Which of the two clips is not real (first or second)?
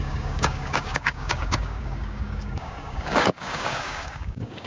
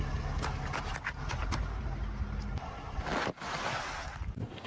first